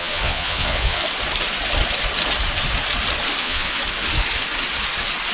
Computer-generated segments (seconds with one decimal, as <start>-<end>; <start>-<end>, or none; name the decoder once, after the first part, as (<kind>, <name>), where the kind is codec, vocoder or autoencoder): 0.0-1.0 (vocoder, Vocos); 3.4-3.8